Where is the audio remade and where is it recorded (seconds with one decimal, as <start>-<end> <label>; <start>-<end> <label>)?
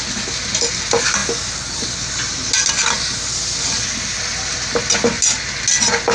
0.0-6.1 recorded